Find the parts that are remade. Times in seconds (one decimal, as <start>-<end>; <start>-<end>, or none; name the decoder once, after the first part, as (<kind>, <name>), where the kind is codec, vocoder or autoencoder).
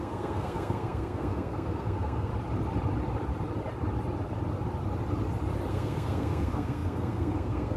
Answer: 0.0-2.3 (codec, SNAC); 5.7-7.8